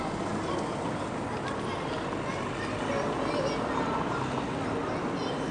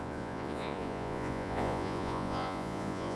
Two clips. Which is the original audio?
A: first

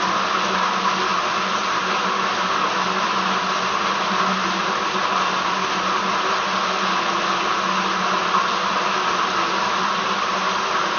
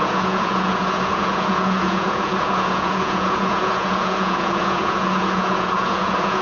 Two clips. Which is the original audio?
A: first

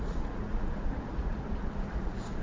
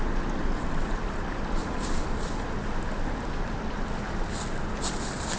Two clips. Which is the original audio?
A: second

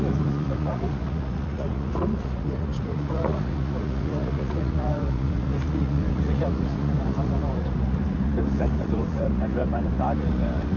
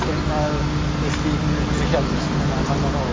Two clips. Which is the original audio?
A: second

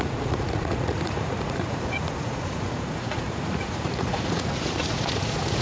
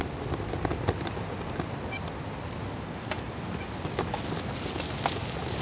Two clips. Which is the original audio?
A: second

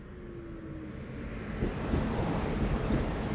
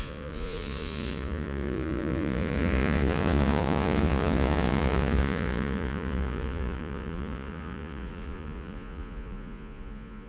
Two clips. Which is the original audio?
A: first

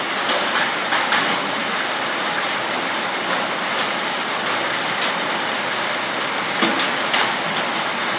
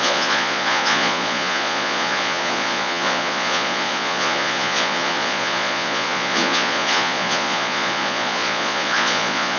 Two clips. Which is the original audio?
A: first